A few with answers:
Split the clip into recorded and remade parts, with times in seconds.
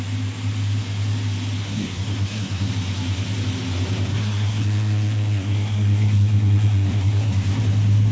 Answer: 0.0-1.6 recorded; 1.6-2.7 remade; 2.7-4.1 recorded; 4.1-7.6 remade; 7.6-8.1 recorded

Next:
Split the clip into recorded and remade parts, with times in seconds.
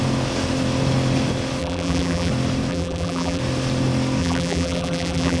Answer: 0.0-1.6 recorded; 1.6-2.3 remade; 2.3-2.7 recorded; 2.7-3.4 remade; 3.4-4.2 recorded; 4.2-5.4 remade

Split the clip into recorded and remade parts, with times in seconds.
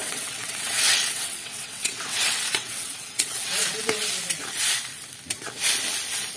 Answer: 0.0-3.8 remade; 3.8-6.4 recorded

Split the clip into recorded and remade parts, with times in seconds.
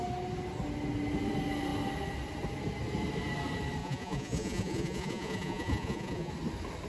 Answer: 0.0-3.8 recorded; 3.8-6.3 remade; 6.3-6.9 recorded